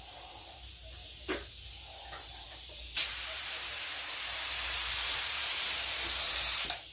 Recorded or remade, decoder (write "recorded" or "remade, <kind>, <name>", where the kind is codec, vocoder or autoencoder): remade, vocoder, BigVGAN v2